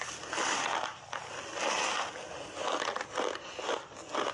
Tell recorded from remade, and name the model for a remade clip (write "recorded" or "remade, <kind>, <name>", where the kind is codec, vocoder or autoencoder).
recorded